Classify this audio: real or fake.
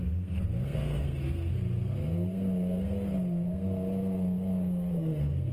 fake